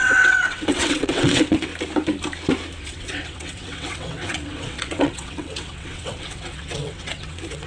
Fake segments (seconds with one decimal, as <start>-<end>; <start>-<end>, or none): 0.0-1.7; 2.8-7.7